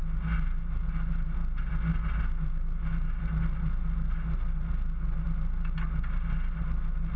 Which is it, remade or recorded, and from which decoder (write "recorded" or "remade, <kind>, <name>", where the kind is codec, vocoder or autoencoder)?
recorded